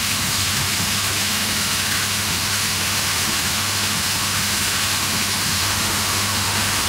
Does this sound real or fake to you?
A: fake